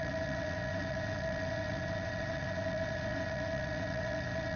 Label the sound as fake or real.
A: fake